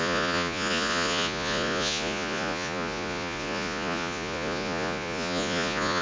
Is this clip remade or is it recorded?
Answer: remade